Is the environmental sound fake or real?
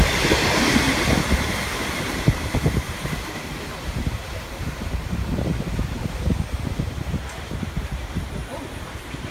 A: fake